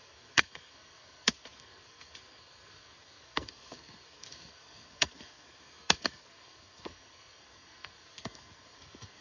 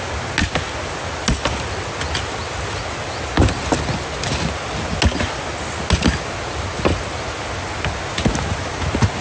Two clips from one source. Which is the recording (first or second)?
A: second